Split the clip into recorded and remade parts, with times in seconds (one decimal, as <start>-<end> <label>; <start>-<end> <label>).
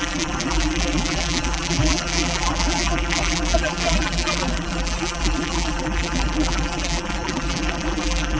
0.0-8.4 remade